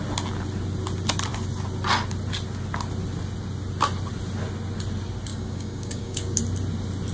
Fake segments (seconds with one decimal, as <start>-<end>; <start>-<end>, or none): 5.3-6.4